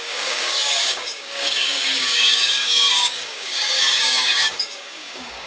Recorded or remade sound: remade